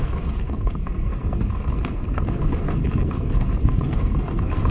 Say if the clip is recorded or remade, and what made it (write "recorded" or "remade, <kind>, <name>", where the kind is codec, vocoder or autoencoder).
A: remade, codec, SNAC